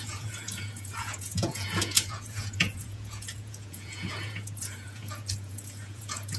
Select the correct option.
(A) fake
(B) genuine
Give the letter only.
A